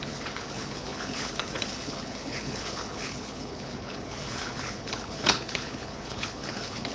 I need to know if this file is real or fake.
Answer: fake